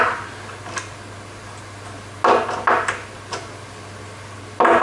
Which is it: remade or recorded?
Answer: recorded